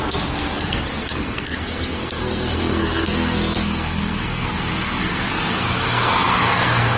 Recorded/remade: remade